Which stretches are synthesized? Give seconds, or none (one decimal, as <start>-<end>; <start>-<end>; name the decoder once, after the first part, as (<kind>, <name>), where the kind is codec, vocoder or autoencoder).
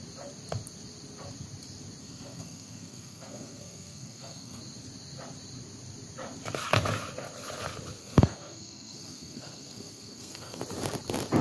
2.0-4.6 (codec, SNAC); 8.0-10.6